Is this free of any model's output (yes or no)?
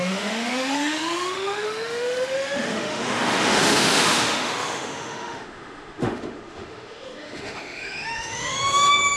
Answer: no